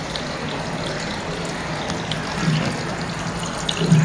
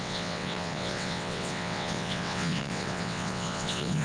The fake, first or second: second